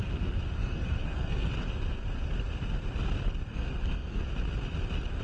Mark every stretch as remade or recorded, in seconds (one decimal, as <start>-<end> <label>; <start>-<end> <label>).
0.0-0.6 recorded; 0.6-1.5 remade; 1.5-3.5 recorded; 3.5-4.2 remade; 4.2-5.2 recorded